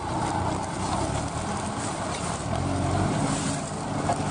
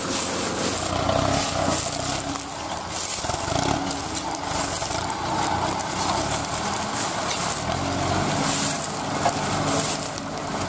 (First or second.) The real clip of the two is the second